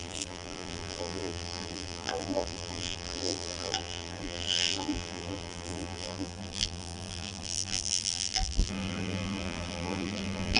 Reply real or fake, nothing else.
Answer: fake